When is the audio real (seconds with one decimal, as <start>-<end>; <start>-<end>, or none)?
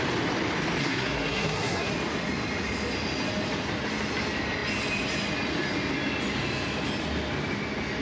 0.0-0.8; 1.9-8.0